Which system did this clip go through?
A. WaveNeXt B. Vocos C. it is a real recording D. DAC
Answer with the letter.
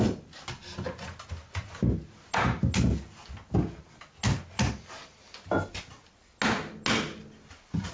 C